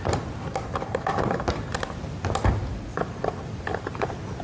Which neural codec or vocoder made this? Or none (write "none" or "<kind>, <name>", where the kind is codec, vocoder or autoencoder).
vocoder, BigVGAN v2